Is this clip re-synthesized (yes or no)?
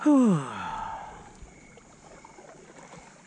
no